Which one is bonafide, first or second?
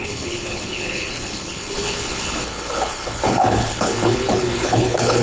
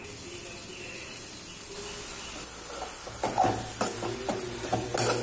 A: second